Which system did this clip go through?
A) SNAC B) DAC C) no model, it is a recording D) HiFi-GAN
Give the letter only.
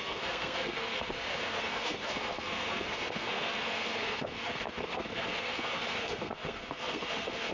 A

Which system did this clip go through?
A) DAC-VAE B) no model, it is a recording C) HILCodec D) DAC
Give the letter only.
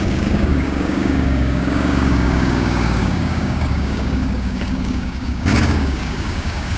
D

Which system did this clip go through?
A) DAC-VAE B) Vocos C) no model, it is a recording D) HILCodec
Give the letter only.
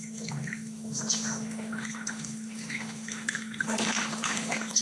A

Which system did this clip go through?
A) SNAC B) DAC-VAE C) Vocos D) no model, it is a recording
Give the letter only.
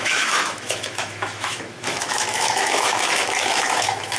B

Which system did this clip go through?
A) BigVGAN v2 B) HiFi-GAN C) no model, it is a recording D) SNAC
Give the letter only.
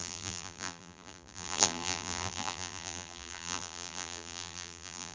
A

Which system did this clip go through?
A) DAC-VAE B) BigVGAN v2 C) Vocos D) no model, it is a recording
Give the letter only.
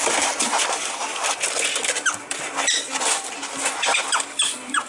B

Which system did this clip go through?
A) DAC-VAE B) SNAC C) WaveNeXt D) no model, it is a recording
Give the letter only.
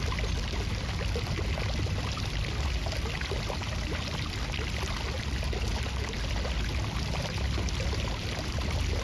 D